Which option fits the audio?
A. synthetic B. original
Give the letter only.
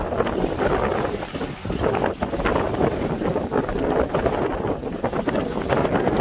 B